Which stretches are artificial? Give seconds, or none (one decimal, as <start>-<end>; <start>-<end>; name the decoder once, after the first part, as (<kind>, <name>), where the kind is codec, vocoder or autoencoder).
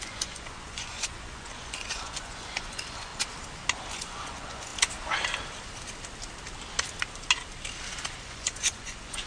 0.0-3.1 (vocoder, Vocos); 3.9-4.7; 8.2-9.3